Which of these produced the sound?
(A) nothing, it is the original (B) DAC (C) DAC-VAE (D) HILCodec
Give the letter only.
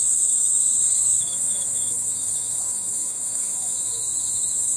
C